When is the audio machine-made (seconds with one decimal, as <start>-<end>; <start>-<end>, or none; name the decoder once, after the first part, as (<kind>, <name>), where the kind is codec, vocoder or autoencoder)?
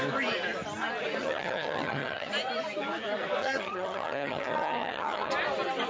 1.2-2.3 (vocoder, HiFi-GAN); 3.4-5.3